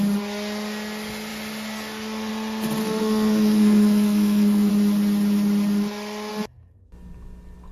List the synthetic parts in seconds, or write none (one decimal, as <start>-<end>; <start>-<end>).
2.8-4.7